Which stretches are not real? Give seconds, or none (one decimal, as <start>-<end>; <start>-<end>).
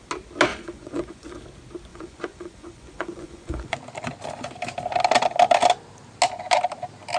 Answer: 0.5-1.4; 1.9-3.8